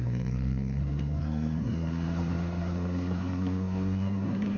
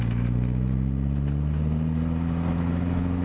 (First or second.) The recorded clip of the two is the second